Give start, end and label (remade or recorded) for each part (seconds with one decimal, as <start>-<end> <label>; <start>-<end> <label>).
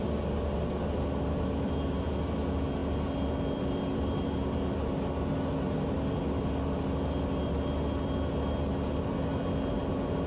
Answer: 0.0-10.3 recorded